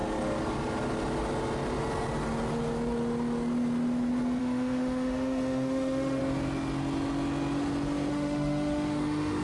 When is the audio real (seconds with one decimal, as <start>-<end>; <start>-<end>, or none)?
0.0-4.4; 6.2-8.1